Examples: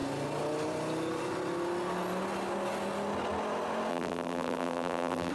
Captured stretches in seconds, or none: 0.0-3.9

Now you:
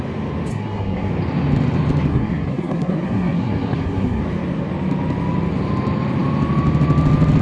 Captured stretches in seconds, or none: 0.0-0.5; 1.1-2.1; 4.2-7.4